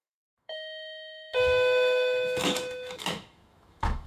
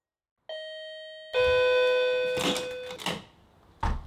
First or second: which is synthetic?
first